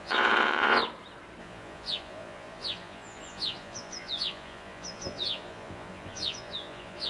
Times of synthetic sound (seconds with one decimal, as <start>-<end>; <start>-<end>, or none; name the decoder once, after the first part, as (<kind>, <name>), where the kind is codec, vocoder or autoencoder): 0.0-0.8 (vocoder, Vocos); 1.4-7.1